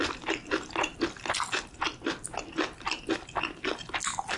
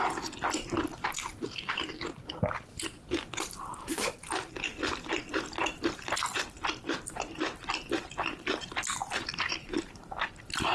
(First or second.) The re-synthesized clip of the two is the second